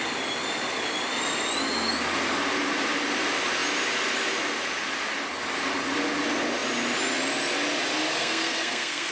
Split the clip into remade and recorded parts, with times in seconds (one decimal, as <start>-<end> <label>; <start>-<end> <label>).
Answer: 0.0-8.2 recorded; 8.2-9.1 remade